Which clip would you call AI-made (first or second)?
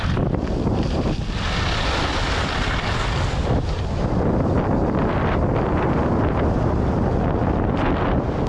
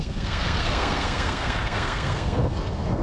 second